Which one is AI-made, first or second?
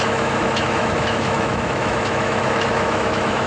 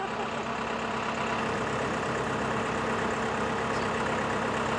first